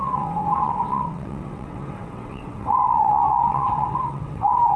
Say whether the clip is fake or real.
fake